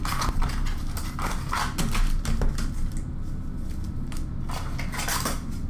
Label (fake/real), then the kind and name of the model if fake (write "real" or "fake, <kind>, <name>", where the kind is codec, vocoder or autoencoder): real